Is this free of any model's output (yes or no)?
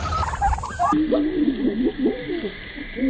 yes